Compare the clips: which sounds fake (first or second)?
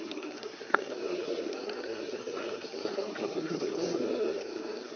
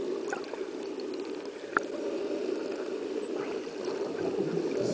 first